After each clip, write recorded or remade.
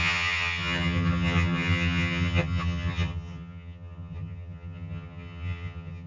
remade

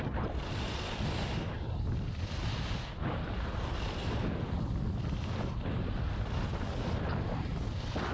recorded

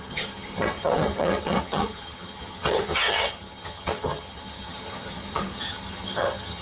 remade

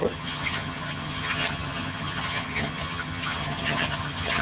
remade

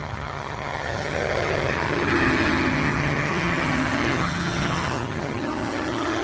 remade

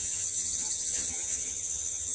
remade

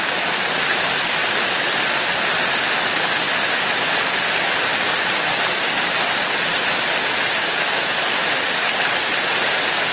recorded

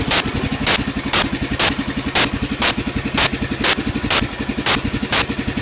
recorded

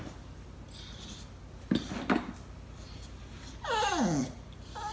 recorded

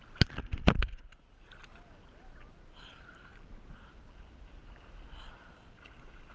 recorded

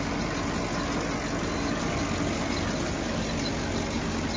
recorded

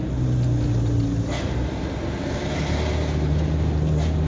recorded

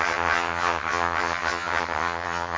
remade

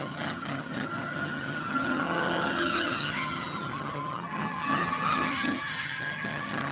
remade